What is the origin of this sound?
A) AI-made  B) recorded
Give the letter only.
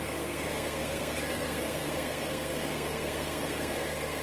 A